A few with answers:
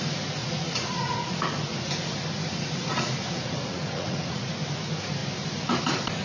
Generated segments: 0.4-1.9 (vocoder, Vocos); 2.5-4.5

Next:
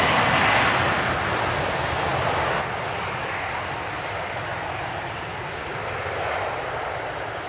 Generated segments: none